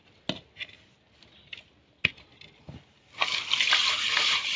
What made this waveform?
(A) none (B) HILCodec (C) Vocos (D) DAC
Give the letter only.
A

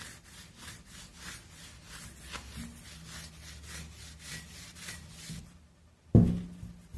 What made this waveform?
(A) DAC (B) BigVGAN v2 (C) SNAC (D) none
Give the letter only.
D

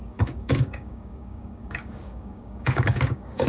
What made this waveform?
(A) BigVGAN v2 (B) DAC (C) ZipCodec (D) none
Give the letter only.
B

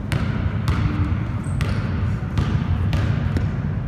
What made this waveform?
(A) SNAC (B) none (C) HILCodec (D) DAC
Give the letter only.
B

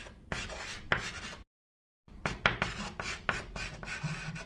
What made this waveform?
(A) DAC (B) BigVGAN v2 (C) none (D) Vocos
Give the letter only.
C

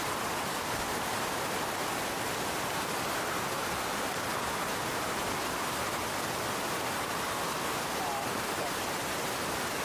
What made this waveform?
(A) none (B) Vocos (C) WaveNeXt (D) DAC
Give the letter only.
A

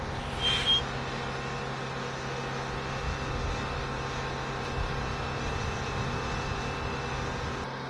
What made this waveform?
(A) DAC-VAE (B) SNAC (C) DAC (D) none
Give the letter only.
D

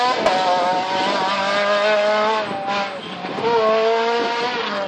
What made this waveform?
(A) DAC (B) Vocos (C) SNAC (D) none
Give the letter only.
D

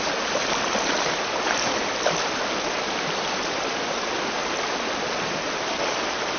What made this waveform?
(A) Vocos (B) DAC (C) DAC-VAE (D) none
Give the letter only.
D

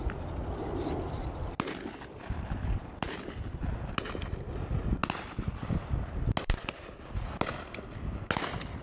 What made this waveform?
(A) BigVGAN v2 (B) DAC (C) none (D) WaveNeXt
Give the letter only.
C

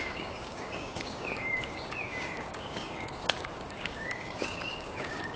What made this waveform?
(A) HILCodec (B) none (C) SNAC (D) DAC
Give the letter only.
D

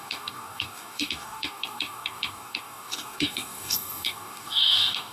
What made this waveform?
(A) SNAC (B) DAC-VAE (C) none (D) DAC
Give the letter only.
D